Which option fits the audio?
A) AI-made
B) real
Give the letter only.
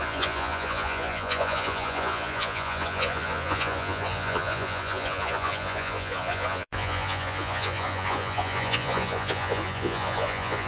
A